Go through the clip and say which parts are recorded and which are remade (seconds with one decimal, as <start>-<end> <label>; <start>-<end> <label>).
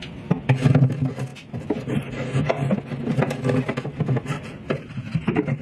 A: 0.0-5.6 recorded